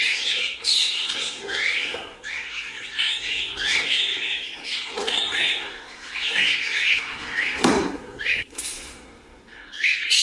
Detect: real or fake fake